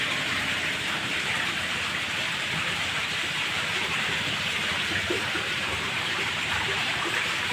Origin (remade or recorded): remade